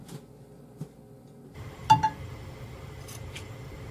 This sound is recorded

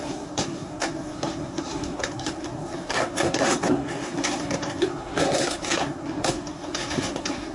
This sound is remade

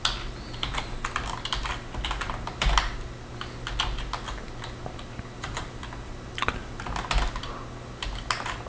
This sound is recorded